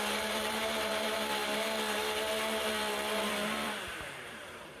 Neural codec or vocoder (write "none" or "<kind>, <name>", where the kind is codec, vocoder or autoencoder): vocoder, BigVGAN v2